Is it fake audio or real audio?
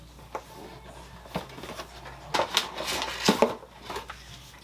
real